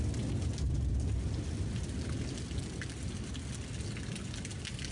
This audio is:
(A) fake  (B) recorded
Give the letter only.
B